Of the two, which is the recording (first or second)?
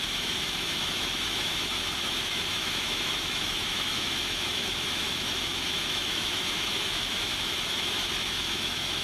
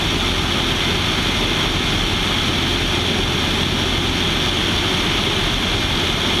second